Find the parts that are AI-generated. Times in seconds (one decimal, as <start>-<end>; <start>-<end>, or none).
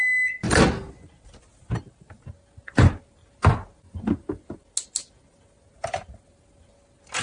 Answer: none